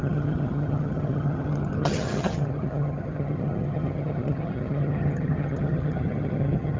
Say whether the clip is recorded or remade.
remade